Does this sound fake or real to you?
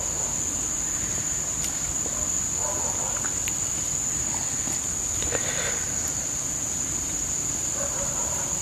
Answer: real